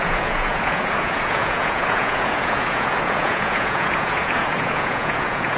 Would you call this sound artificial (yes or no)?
yes